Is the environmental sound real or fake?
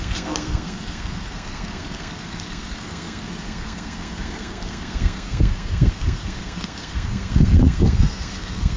fake